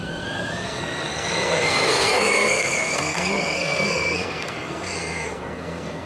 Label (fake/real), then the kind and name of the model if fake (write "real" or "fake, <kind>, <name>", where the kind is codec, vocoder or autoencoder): fake, codec, SNAC